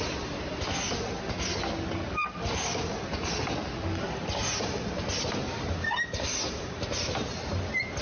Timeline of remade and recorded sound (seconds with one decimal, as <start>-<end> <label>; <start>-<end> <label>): 0.0-4.4 recorded; 4.4-7.1 remade; 7.1-8.0 recorded